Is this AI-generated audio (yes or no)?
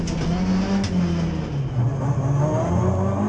no